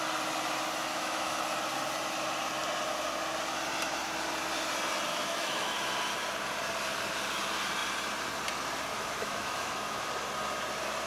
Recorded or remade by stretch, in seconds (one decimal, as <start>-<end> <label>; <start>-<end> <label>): 0.0-0.9 recorded; 0.9-1.4 remade; 1.4-5.1 recorded; 5.1-5.7 remade; 5.7-8.9 recorded; 8.9-10.1 remade; 10.1-11.1 recorded